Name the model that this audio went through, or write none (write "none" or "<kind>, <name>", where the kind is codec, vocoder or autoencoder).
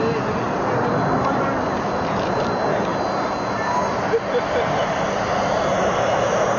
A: none